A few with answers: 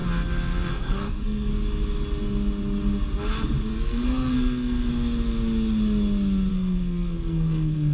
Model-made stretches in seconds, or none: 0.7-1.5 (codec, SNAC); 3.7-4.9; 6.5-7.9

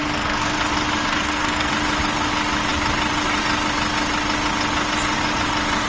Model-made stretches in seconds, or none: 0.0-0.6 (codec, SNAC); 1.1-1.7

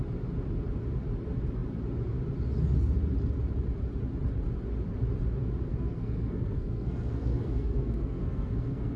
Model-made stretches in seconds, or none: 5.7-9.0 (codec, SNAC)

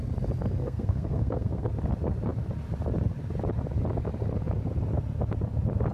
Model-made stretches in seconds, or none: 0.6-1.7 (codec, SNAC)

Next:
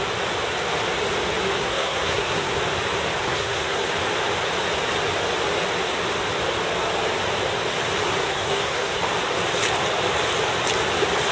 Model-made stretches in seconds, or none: 1.6-2.6 (codec, SNAC); 3.2-3.9; 8.2-9.0